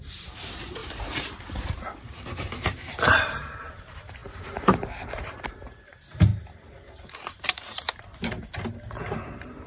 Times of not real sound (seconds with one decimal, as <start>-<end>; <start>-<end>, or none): 0.0-6.3; 7.0-8.1; 9.0-9.7